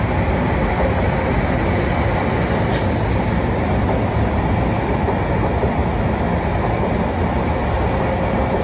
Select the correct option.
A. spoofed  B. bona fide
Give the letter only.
B